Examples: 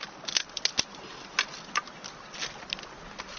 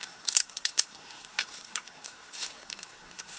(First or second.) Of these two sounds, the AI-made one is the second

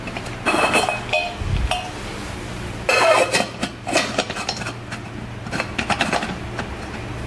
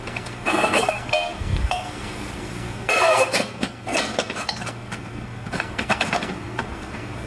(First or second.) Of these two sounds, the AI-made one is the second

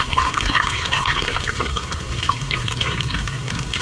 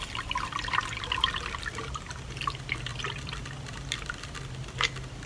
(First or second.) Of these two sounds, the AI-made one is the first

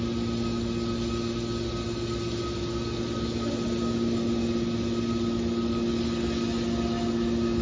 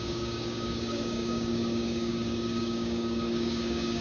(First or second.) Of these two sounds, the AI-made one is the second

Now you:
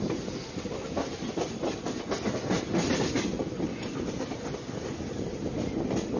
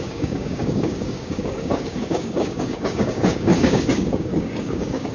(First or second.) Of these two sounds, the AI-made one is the second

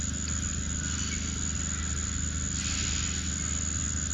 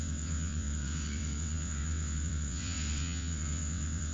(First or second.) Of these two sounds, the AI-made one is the second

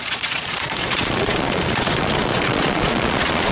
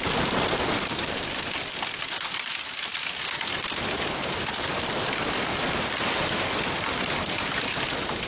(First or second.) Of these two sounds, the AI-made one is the first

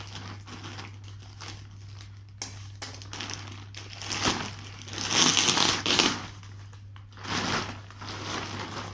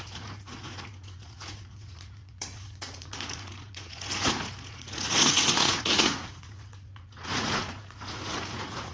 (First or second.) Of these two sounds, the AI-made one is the second